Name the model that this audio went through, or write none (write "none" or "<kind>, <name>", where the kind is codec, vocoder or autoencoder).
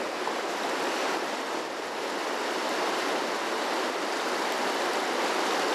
none